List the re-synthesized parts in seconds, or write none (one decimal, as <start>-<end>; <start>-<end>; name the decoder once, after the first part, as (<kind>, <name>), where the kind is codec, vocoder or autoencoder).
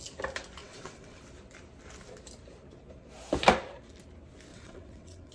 0.6-1.2 (vocoder, WaveNeXt); 4.5-5.3